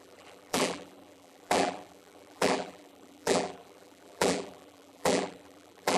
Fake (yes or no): yes